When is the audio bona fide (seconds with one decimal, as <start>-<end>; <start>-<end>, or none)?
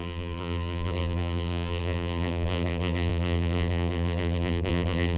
none